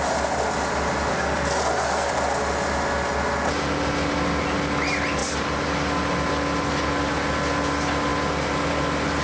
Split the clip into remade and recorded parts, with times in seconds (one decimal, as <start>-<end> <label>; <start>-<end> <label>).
0.0-1.1 recorded; 1.1-2.1 remade; 2.1-9.2 recorded